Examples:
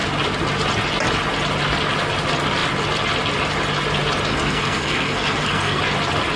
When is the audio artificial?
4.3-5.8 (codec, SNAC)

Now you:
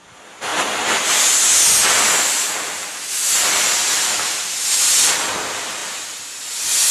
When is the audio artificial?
none

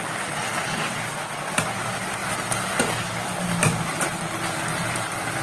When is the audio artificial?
0.0-0.4 (vocoder, BigVGAN v2); 1.8-2.2; 3.4-5.4

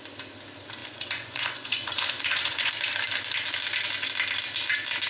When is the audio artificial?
0.8-2.7 (vocoder, Vocos)

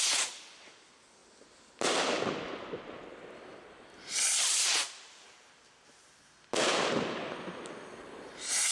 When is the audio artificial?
none

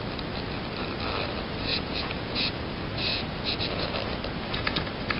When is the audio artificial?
1.7-2.6 (vocoder, Vocos); 3.1-3.9